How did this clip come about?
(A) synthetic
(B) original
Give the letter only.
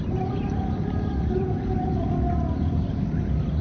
B